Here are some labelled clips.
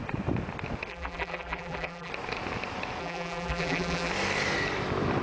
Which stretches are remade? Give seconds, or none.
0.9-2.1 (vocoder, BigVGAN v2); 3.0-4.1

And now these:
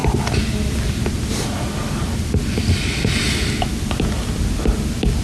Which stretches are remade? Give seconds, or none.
0.0-3.1 (vocoder, BigVGAN v2)

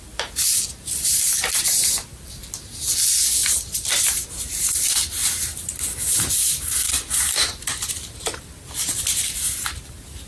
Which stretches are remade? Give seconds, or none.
none

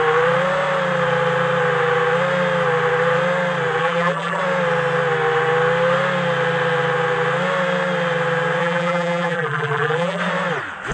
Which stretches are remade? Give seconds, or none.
3.8-4.4 (vocoder, BigVGAN v2); 8.6-10.2

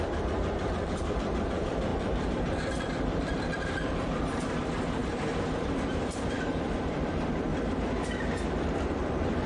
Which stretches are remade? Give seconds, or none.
0.0-7.5 (vocoder, BigVGAN v2); 8.6-9.5

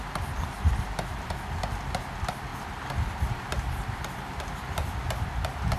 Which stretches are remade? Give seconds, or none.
none